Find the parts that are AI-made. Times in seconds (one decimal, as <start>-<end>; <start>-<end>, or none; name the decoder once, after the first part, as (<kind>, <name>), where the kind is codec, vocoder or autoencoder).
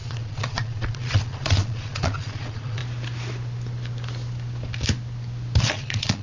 0.0-2.8 (vocoder, Vocos); 5.6-6.2